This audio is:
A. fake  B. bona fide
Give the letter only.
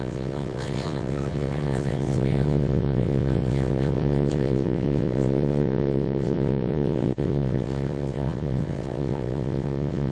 A